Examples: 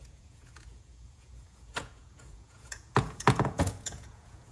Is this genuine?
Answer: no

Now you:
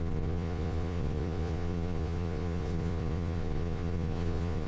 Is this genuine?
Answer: no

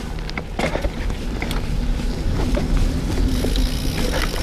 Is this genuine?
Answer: yes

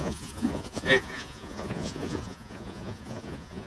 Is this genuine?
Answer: no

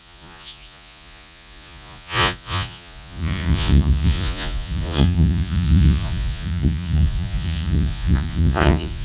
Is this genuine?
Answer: no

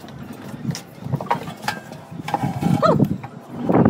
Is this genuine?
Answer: yes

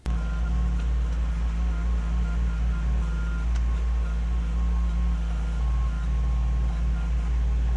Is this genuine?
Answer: yes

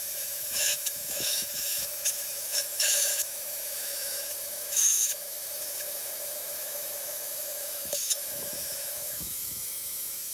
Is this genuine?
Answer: no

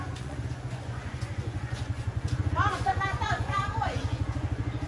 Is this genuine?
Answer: no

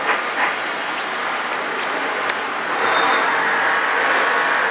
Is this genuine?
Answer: yes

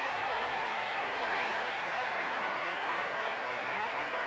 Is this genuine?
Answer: no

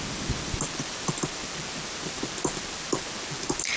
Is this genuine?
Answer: yes